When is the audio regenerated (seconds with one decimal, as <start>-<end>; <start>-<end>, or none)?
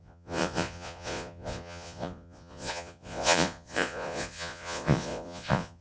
0.0-5.8